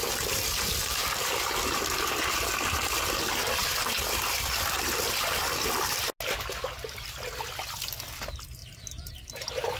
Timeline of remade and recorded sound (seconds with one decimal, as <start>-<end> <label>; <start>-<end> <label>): 0.0-0.8 recorded; 0.8-1.5 remade; 1.5-3.6 recorded; 3.6-4.2 remade; 4.2-8.6 recorded; 8.6-9.1 remade; 9.1-9.8 recorded